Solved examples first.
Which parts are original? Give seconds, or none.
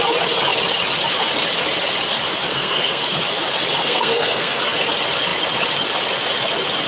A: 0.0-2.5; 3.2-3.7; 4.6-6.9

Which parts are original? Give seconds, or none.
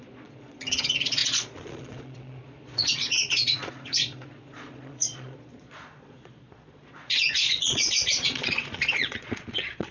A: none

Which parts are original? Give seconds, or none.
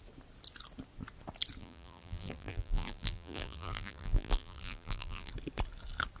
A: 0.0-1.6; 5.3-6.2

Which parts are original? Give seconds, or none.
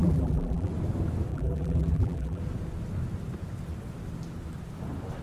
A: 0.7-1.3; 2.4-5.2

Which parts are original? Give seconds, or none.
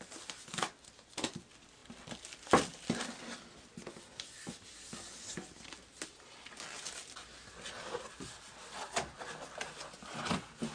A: 0.0-10.7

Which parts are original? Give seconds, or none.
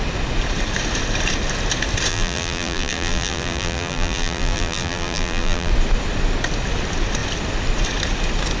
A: 0.0-2.1; 5.7-8.6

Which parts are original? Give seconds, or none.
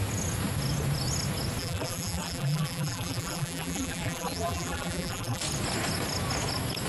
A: 0.0-1.6; 5.4-6.9